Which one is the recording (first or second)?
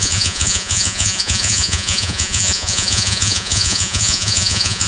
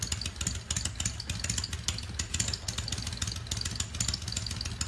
second